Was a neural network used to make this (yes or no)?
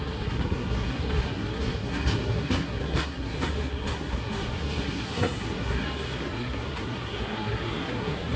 yes